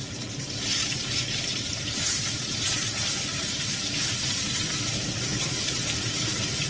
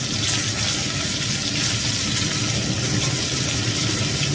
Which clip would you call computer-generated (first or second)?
first